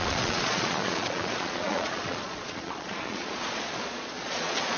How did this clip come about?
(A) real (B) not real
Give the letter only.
B